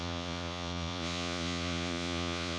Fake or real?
fake